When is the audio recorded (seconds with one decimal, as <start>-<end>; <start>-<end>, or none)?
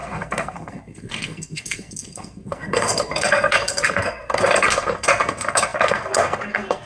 none